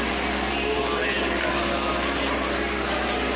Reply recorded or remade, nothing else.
recorded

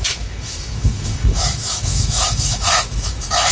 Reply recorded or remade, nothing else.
remade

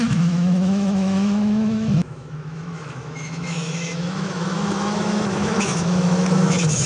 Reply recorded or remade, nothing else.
remade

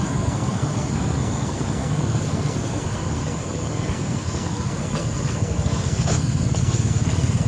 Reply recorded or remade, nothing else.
remade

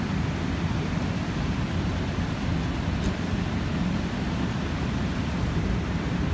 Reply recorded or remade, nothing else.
recorded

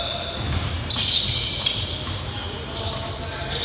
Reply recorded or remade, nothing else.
recorded